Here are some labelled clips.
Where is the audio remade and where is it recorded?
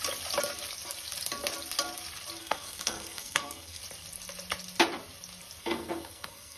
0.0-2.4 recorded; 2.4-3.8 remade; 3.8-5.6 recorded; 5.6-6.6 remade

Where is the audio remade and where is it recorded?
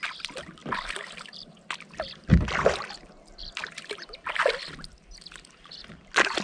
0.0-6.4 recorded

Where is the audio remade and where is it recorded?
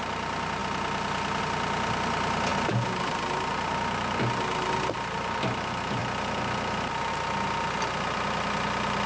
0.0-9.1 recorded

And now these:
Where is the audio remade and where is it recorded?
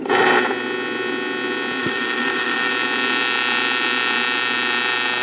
0.0-1.8 recorded; 1.8-2.7 remade; 2.7-5.2 recorded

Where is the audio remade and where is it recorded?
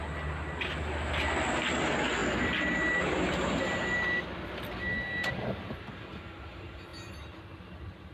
0.0-8.1 recorded